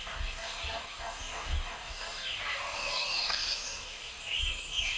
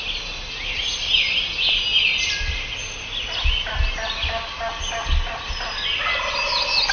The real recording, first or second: second